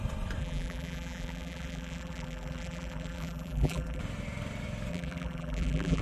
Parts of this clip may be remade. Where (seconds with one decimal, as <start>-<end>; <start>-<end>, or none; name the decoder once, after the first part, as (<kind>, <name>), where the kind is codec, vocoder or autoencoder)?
0.4-4.0 (vocoder, BigVGAN v2); 4.9-6.0